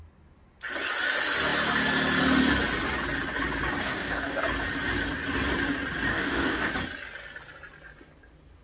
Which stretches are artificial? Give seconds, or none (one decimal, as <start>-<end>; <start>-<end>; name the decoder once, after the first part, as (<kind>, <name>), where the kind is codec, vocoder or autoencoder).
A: 3.8-4.4 (codec, DAC); 6.1-6.7